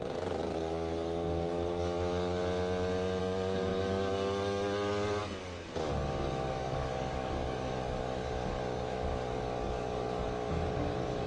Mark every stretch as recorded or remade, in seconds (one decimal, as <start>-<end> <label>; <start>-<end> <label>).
0.0-2.4 remade; 2.4-3.2 recorded; 3.2-11.3 remade